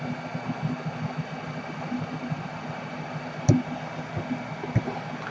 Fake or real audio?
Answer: real